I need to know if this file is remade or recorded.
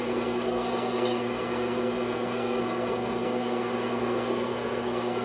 remade